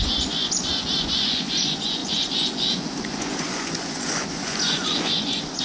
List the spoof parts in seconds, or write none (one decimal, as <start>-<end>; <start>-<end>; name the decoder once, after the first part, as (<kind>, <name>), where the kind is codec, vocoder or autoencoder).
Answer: 0.0-5.6 (vocoder, Vocos)